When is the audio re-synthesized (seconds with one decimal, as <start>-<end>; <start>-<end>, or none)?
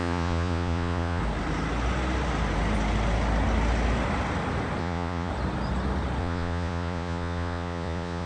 0.0-1.2; 4.8-5.3; 6.2-8.3